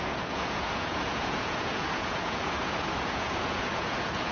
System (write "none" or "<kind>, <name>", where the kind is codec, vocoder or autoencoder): vocoder, Vocos